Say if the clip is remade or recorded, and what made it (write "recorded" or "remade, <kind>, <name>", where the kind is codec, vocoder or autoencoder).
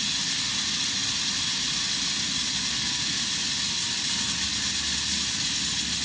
recorded